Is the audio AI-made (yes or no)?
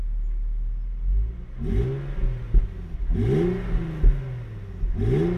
no